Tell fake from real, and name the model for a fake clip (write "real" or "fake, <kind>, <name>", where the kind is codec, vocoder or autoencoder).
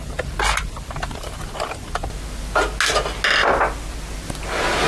real